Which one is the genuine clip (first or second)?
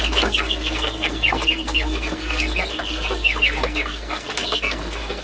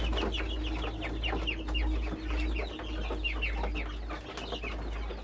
second